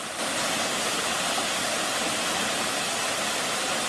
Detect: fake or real real